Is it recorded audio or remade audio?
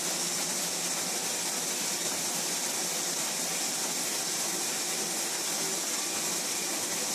recorded